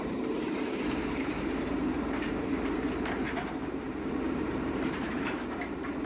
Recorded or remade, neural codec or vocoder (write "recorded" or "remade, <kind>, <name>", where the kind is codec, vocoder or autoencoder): remade, vocoder, BigVGAN v2